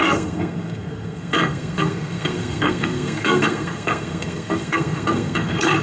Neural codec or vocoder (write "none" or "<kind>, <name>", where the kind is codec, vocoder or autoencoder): codec, SNAC